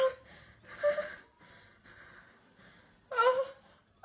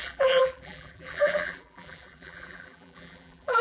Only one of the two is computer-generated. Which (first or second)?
second